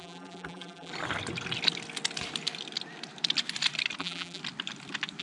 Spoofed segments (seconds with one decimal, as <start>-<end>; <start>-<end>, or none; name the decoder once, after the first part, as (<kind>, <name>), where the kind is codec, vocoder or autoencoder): 0.0-0.9 (vocoder, BigVGAN v2); 4.0-4.4